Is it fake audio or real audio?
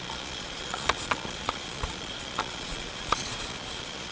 fake